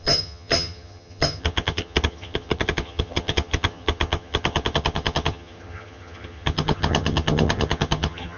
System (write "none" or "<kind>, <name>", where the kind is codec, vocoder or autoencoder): vocoder, HiFi-GAN